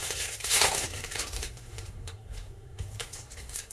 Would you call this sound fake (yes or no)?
yes